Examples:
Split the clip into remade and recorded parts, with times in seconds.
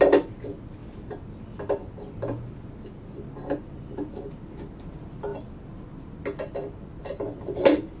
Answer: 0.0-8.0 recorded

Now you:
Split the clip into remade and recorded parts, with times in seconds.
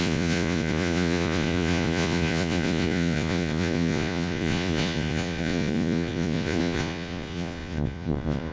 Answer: 0.0-8.5 remade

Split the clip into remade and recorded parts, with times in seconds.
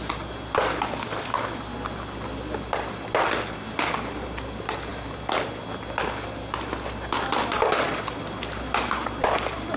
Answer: 0.0-9.8 recorded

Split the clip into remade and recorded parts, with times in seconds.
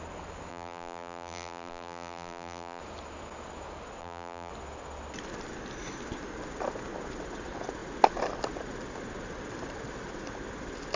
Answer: 0.0-0.5 recorded; 0.5-2.8 remade; 2.8-4.0 recorded; 4.0-4.5 remade; 4.5-11.0 recorded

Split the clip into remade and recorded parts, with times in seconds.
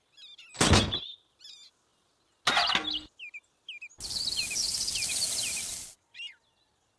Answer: 0.0-7.0 recorded